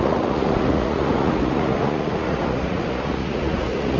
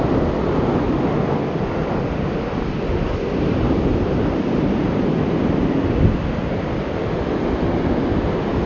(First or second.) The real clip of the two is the second